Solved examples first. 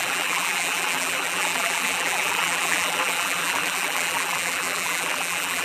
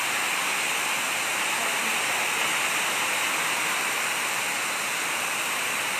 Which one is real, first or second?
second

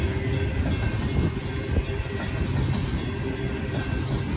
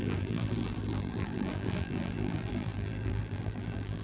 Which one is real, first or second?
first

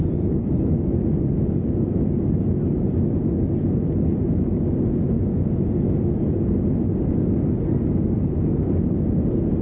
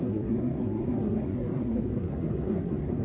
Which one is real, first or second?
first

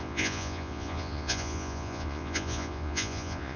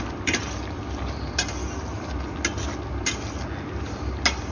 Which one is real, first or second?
second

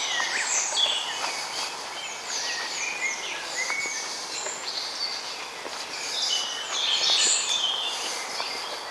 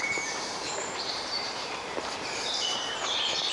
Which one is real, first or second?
first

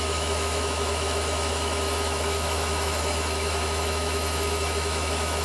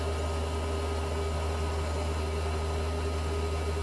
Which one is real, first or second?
second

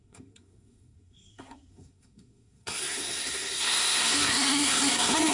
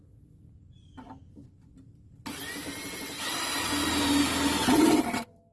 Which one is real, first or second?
second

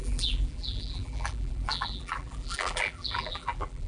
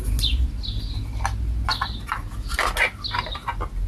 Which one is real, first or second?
second